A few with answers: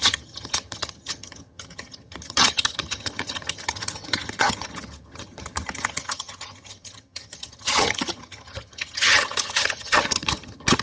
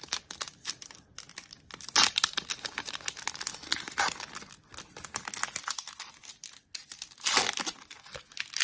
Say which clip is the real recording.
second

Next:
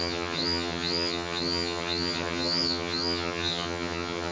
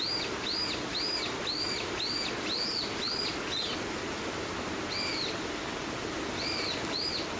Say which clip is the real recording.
second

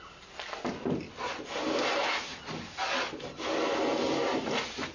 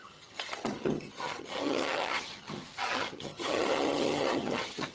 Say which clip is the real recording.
first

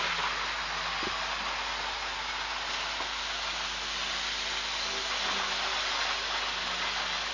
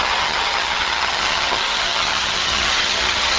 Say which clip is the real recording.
first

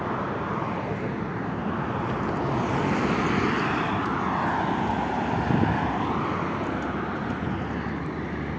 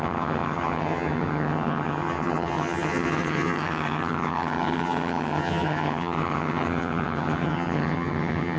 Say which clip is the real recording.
first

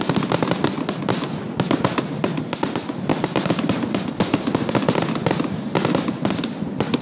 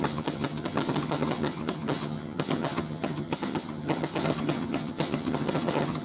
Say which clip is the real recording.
first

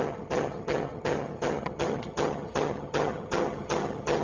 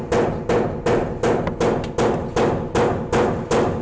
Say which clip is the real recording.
second